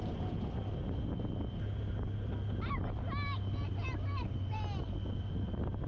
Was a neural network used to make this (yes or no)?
no